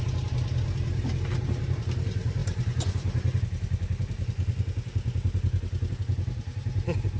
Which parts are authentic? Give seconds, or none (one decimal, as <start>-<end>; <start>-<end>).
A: 0.0-7.2